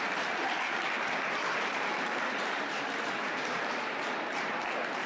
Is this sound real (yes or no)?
no